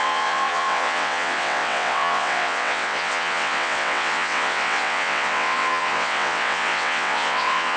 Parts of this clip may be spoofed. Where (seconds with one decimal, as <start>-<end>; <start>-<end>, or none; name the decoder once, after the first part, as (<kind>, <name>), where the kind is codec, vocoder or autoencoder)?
0.0-7.8 (vocoder, WaveNeXt)